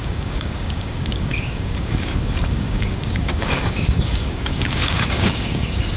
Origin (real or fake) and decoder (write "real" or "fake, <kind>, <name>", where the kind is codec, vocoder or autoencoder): fake, codec, DAC